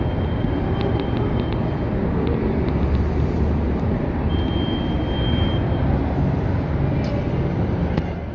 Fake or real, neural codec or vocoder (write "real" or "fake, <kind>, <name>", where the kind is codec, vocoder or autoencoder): real